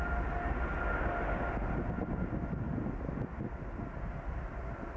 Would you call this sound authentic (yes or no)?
yes